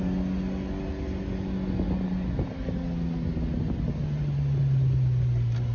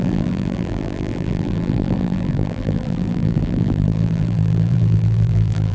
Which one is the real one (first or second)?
first